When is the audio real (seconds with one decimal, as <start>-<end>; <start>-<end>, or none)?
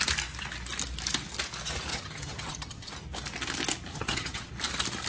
0.0-1.9; 2.9-3.9; 4.5-5.1